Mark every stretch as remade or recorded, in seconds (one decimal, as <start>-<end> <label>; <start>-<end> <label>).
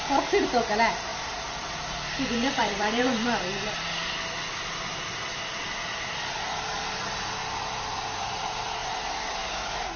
0.0-1.1 recorded; 1.1-1.8 remade; 1.8-2.6 recorded; 2.6-3.8 remade; 3.8-10.0 recorded